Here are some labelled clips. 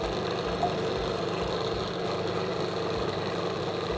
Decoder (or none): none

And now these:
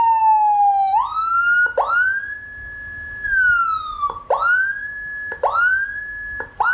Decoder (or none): none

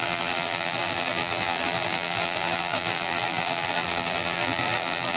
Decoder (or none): vocoder, BigVGAN v2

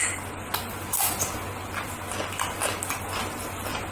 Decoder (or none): none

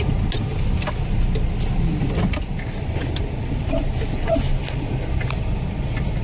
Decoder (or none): none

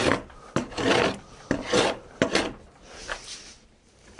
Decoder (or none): none